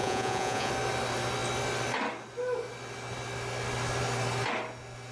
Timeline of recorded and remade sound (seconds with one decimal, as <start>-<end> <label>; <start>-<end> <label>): 0.0-0.7 remade; 0.7-5.1 recorded